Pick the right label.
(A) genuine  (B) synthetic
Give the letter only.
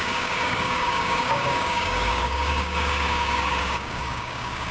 B